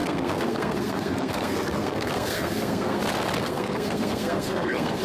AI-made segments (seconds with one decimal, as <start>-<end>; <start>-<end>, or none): 0.0-3.0; 3.4-5.0